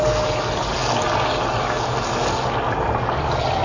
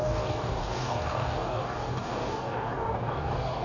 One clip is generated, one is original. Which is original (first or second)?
first